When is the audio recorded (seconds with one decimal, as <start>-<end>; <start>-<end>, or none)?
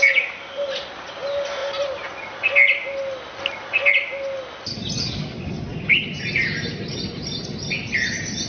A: 0.0-8.5